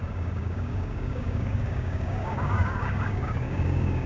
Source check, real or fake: fake